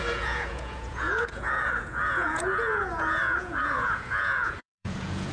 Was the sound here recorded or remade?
remade